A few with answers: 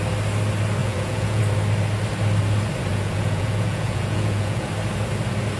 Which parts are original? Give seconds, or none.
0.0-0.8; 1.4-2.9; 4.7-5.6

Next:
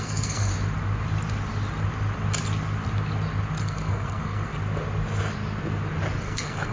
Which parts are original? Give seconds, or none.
0.5-3.6; 4.5-6.2

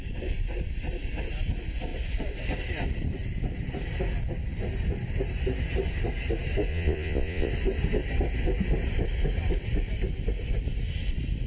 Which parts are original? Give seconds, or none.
0.0-6.7; 7.5-11.5

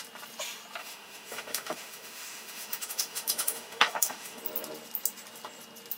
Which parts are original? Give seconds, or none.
0.0-0.8; 4.4-6.0